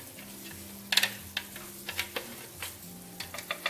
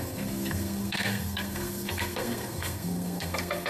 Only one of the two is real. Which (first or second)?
first